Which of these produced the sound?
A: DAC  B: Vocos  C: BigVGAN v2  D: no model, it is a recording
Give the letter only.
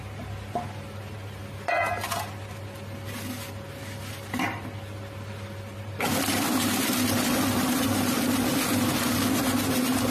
D